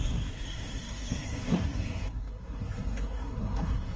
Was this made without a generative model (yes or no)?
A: no